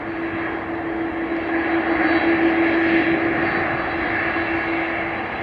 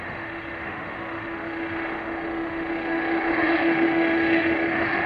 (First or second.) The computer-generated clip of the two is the second